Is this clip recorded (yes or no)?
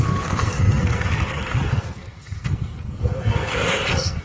no